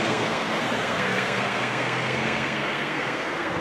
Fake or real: fake